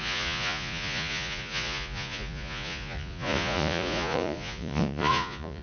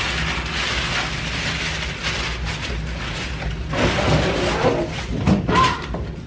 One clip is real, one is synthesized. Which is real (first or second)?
second